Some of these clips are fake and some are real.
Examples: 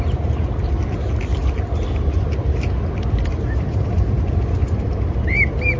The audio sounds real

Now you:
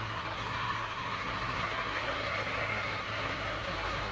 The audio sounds fake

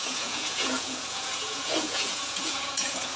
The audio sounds fake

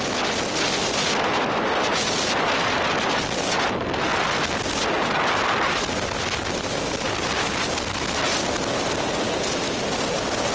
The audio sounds real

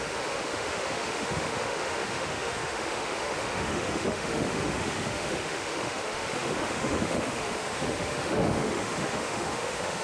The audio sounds fake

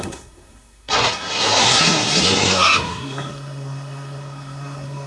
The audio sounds fake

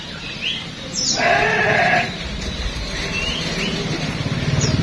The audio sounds fake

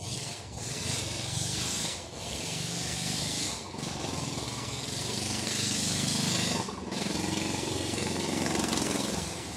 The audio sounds fake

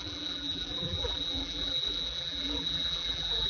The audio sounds fake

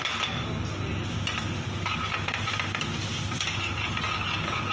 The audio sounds real